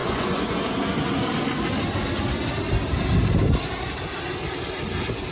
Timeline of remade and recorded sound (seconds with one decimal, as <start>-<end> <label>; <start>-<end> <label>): 0.0-0.6 remade; 0.6-5.3 recorded